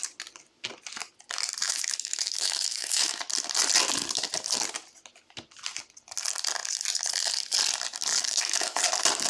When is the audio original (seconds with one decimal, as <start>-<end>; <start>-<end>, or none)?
0.0-1.6; 3.2-8.1; 8.8-9.3